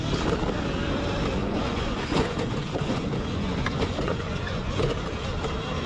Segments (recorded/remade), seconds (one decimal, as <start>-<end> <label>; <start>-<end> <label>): 0.0-1.4 recorded; 1.4-4.9 remade; 4.9-5.9 recorded